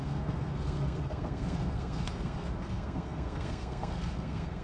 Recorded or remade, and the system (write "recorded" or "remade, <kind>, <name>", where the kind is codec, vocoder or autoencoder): remade, codec, SNAC